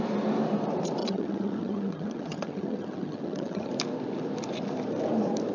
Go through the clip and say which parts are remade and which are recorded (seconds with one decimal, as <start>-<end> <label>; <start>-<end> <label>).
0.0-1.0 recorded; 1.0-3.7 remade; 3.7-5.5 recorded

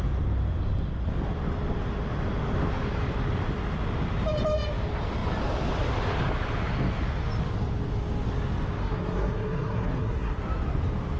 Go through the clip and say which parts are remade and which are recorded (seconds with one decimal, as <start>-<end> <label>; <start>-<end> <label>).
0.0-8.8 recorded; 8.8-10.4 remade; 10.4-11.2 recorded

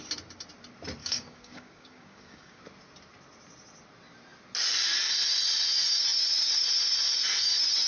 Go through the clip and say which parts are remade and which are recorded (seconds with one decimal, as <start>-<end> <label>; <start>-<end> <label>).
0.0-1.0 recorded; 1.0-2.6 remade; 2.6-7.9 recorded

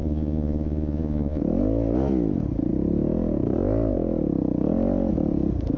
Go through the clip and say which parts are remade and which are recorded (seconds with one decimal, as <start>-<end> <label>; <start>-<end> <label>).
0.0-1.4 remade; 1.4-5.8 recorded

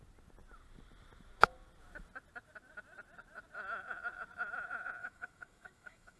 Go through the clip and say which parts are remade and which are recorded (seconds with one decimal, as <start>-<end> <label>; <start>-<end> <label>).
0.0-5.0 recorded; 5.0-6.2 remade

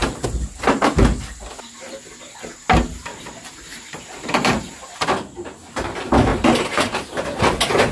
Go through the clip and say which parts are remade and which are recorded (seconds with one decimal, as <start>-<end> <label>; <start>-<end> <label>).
0.0-3.1 recorded; 3.1-4.8 remade; 4.8-6.3 recorded; 6.3-7.4 remade; 7.4-7.9 recorded